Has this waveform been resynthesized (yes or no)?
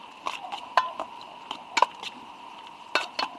no